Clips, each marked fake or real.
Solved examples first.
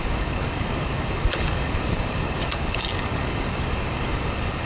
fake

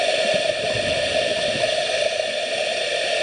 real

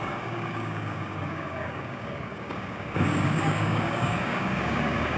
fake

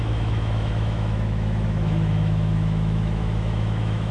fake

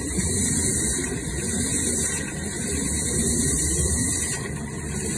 fake